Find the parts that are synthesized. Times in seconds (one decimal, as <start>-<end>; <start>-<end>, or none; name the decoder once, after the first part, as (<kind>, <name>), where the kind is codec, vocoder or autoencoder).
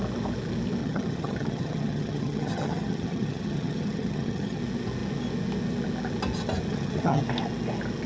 0.8-4.6 (vocoder, HiFi-GAN); 6.7-7.2